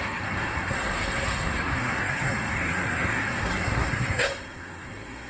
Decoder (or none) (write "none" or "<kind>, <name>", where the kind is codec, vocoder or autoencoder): codec, SNAC